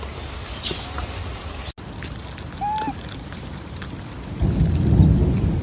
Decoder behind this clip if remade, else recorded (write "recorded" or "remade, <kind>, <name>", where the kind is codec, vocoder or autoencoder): recorded